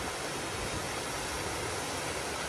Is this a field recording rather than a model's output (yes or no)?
yes